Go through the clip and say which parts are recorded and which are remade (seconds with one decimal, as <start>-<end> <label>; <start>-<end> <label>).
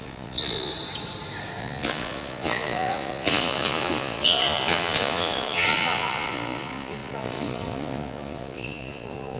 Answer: 0.0-0.7 remade; 0.7-1.6 recorded; 1.6-9.4 remade